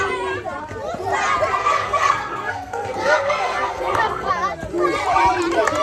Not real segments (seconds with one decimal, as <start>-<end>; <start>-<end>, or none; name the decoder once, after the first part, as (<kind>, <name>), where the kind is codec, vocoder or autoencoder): 1.6-4.3 (codec, SNAC)